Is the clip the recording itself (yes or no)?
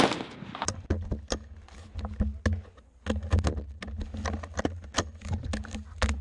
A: yes